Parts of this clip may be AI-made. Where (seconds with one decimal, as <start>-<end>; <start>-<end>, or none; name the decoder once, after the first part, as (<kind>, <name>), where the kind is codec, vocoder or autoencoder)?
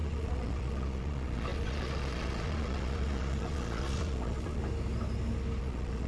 0.0-4.6 (vocoder, Vocos); 5.6-6.1